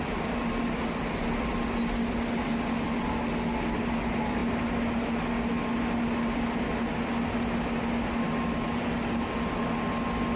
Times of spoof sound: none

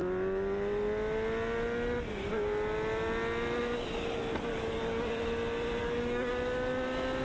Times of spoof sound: 4.5-5.1 (codec, DAC); 5.8-6.3

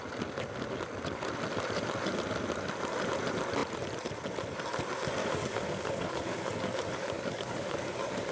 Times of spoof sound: 5.2-8.3 (codec, DAC)

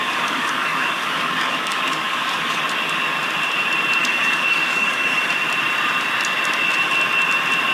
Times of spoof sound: 0.0-2.6 (codec, DAC); 4.0-5.3

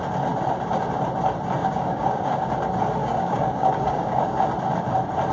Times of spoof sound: 1.6-2.5 (codec, DAC); 3.0-4.4

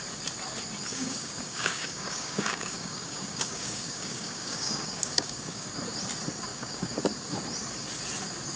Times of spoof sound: 0.9-5.7 (codec, DAC); 6.5-7.0

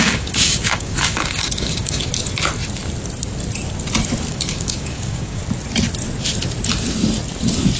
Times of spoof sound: 0.0-2.1 (codec, DAC); 4.3-5.4

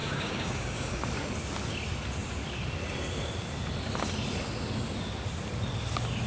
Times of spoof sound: 0.0-1.0 (codec, DAC)